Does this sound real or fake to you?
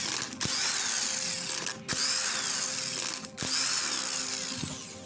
real